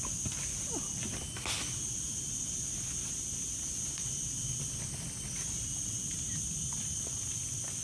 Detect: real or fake real